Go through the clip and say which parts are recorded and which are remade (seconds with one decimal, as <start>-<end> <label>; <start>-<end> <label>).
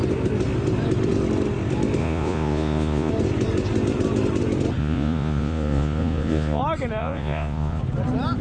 0.0-2.0 recorded; 2.0-3.1 remade; 3.1-4.8 recorded; 4.8-6.6 remade; 6.6-7.0 recorded; 7.0-7.8 remade; 7.8-8.4 recorded